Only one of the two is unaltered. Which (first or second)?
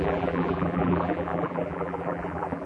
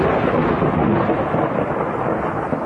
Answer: second